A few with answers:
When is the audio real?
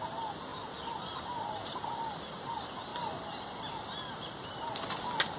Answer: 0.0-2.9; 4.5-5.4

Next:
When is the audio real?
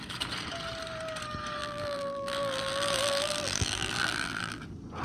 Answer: 0.0-1.6; 4.6-5.0